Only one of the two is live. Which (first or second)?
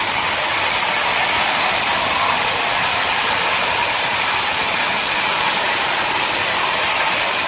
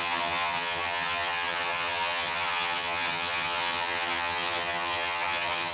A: first